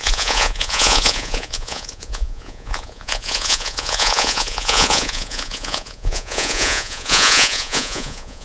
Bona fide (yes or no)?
no